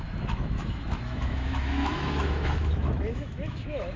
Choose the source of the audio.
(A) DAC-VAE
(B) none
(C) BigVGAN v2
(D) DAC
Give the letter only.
A